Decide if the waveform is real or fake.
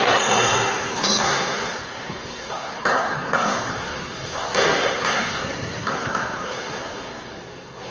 fake